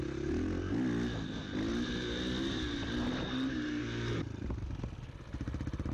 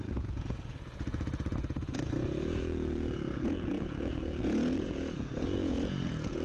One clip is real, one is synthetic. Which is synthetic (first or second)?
second